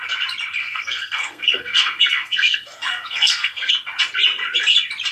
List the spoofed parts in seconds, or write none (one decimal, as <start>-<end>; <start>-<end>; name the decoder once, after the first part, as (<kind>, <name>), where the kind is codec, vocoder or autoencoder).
0.6-3.7 (codec, SNAC)